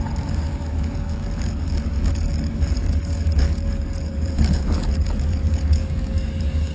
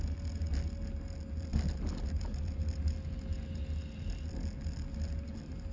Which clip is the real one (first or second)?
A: second